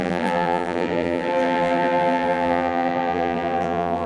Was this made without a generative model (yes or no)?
no